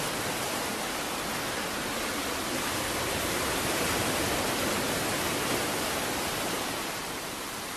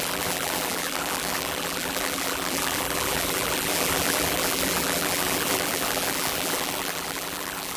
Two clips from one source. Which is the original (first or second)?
first